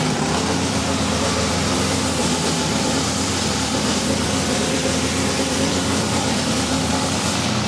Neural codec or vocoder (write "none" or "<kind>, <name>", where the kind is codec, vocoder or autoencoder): vocoder, BigVGAN v2